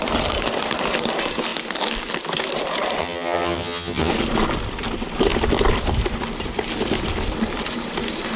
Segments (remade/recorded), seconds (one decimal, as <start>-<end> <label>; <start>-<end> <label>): 0.0-3.0 recorded; 3.0-4.1 remade; 4.1-8.4 recorded